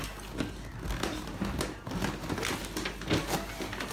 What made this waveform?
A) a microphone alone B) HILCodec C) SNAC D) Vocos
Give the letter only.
A